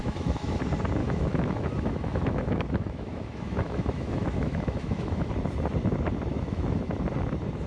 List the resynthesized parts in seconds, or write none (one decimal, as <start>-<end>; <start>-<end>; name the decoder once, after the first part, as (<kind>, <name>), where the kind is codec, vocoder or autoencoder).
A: 0.0-0.6 (autoencoder, DAC-VAE); 1.0-5.3; 6.3-6.9